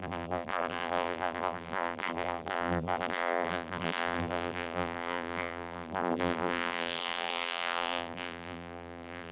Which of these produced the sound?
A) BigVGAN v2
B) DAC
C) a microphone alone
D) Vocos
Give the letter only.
A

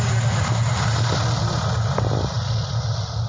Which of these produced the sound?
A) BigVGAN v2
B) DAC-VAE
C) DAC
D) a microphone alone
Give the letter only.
D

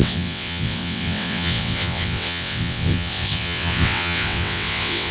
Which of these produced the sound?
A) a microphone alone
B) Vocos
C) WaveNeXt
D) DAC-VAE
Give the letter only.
C